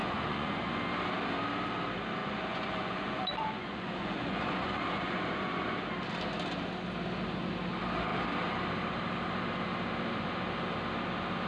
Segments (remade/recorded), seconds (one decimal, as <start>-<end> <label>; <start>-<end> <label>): 0.0-0.7 remade; 0.7-2.2 recorded; 2.2-5.7 remade; 5.7-11.5 recorded